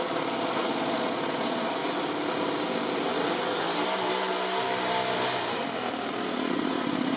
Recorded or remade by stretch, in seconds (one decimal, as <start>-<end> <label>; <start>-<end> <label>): 0.0-1.8 remade; 1.8-6.1 recorded; 6.1-7.2 remade